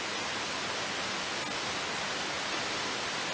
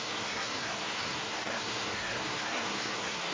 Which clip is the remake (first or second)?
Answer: second